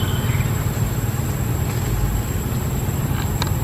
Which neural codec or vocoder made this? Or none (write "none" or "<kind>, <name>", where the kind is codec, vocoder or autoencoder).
none